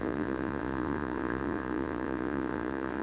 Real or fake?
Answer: fake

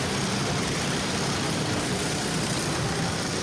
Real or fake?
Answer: fake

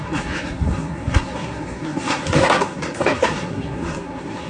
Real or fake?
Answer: fake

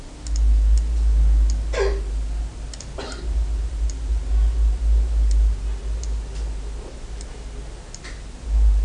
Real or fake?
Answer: real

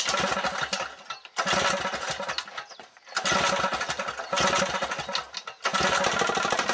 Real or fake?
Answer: real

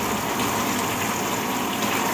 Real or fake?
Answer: real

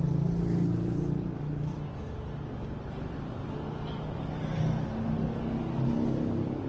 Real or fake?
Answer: real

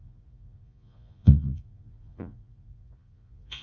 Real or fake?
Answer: fake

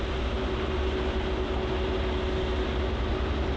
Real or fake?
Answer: real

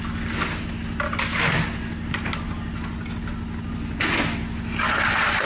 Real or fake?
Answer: real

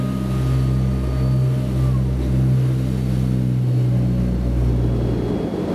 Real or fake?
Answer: real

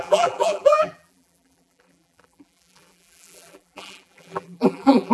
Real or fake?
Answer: fake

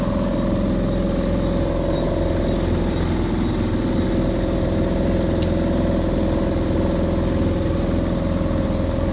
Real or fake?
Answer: real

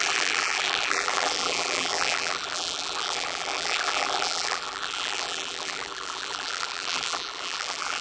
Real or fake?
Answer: fake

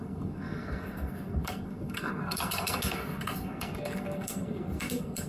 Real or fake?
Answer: fake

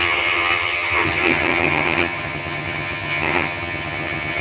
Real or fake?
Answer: fake